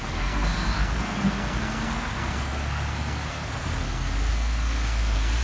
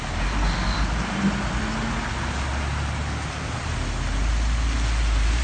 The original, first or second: second